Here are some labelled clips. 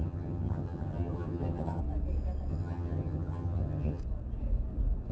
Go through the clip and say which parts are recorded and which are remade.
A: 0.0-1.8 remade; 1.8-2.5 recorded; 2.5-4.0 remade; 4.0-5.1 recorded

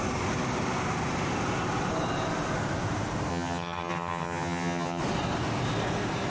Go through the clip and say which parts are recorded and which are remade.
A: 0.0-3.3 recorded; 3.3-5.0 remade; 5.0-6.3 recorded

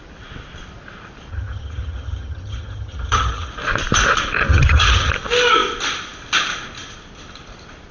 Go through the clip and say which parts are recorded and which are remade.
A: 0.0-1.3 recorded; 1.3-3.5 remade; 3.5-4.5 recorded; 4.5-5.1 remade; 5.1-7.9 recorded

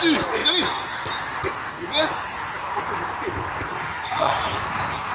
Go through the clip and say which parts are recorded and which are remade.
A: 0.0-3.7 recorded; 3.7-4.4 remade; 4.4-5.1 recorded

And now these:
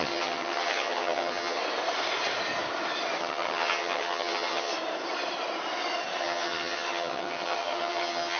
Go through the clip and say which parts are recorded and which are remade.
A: 0.0-1.6 remade; 1.6-3.2 recorded; 3.2-4.7 remade; 4.7-6.2 recorded; 6.2-8.4 remade

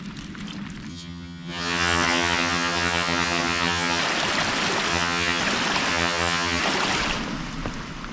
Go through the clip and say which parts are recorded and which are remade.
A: 0.0-0.9 recorded; 0.9-4.0 remade; 4.0-4.9 recorded; 4.9-5.4 remade; 5.4-5.9 recorded; 5.9-6.6 remade; 6.6-8.1 recorded